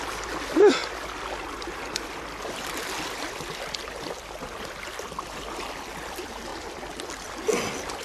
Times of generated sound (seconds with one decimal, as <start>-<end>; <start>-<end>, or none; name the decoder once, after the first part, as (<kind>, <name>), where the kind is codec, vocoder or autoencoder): none